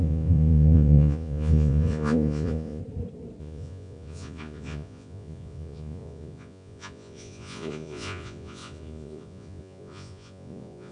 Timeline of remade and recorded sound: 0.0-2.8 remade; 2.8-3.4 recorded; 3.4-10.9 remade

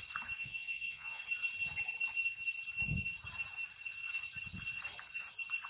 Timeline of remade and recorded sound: 0.0-0.4 recorded; 0.4-1.2 remade; 1.2-5.7 recorded

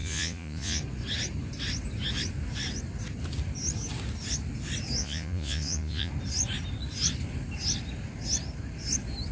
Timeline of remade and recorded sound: 0.0-0.8 remade; 0.8-5.0 recorded; 5.0-6.1 remade; 6.1-9.3 recorded

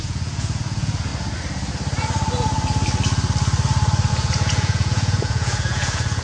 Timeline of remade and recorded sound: 0.0-1.1 remade; 1.1-4.1 recorded; 4.1-6.2 remade

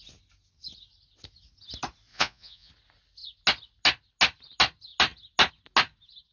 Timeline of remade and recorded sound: 0.0-2.1 recorded; 2.1-2.7 remade; 2.7-6.3 recorded

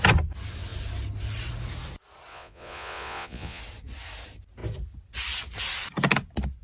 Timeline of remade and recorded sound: 0.0-2.3 recorded; 2.3-3.6 remade; 3.6-6.6 recorded